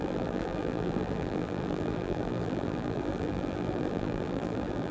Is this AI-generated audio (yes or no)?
yes